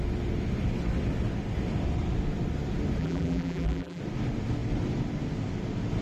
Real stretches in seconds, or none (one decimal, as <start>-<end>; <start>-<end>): 0.0-3.0; 4.0-6.0